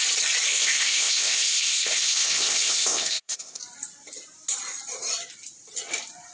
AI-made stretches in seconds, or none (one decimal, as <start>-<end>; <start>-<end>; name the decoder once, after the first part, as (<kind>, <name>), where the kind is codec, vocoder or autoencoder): 0.5-3.6 (codec, ZipCodec)